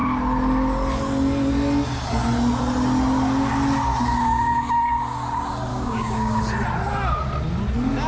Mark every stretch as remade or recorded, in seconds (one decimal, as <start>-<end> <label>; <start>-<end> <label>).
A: 0.0-5.7 recorded; 5.7-6.4 remade; 6.4-8.1 recorded